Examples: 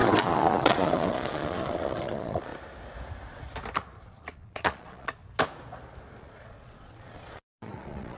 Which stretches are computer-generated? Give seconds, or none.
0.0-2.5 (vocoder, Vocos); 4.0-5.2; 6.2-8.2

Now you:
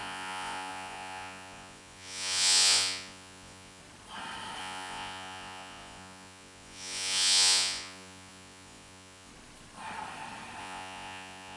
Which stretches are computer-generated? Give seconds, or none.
0.0-3.8 (vocoder, Vocos); 4.6-9.3; 10.6-11.6

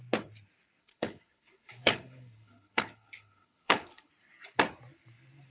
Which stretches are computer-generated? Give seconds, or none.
0.8-4.1 (codec, HILCodec)

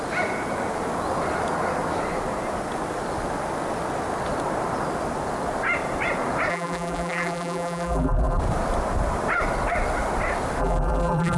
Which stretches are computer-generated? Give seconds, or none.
6.5-8.4 (vocoder, BigVGAN v2); 10.6-11.4

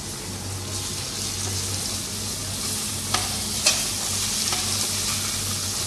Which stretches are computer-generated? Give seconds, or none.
none